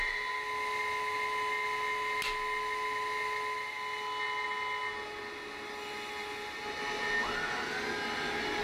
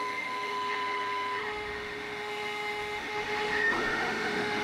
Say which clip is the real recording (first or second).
first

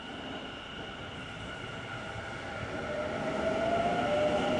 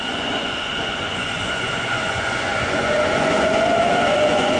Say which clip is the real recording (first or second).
first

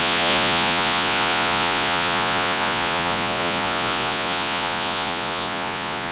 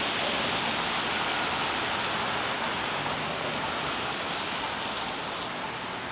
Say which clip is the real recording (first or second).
second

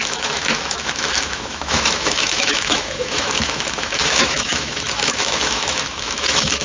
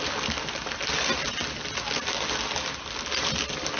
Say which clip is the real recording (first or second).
second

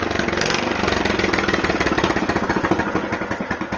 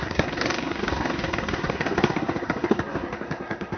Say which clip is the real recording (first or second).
first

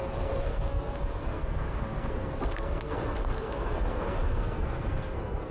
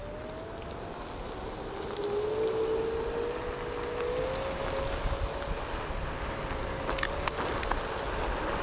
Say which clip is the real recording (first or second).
second